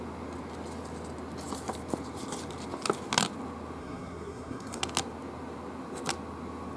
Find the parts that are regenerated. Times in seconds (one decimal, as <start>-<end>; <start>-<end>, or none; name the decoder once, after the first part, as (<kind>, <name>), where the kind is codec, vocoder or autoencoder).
3.8-4.8 (codec, SNAC)